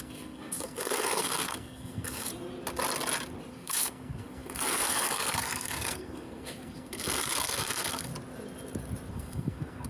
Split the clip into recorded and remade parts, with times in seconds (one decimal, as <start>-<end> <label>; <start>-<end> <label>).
0.0-2.3 remade; 2.3-3.5 recorded; 3.5-8.1 remade; 8.1-9.1 recorded; 9.1-9.9 remade